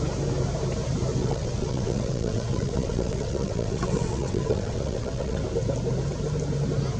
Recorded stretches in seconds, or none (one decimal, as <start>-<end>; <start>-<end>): 0.0-1.2; 5.4-7.0